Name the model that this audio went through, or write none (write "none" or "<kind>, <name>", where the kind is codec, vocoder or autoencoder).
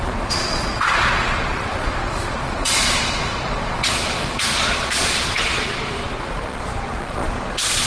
vocoder, Vocos